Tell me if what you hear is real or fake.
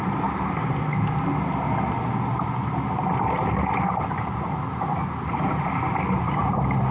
real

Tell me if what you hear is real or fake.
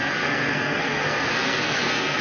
fake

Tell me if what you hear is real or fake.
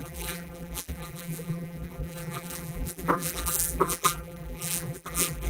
fake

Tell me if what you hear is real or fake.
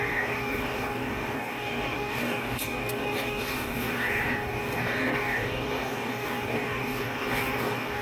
fake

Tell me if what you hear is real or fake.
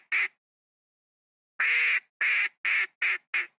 real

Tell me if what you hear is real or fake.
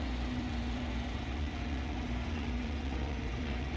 fake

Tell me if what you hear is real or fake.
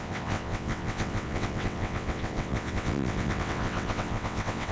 fake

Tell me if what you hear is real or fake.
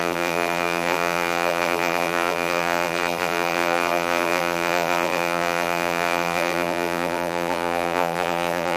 fake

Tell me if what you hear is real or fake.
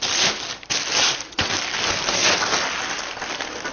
real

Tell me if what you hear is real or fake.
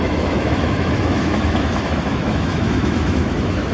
fake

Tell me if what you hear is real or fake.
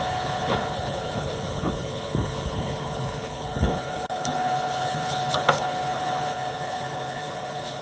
fake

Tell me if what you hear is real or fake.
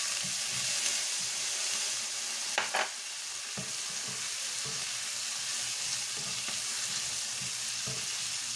real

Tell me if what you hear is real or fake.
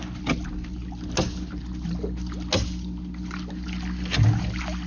real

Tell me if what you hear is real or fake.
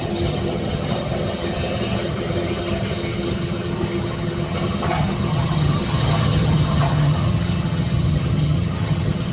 fake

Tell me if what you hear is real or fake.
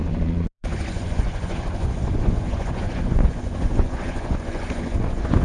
fake